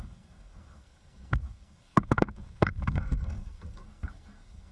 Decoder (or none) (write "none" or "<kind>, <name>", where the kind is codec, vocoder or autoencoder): codec, SNAC